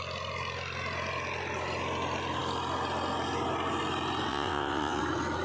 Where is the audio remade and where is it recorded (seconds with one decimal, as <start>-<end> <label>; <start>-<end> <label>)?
0.0-4.3 recorded; 4.3-5.0 remade; 5.0-5.4 recorded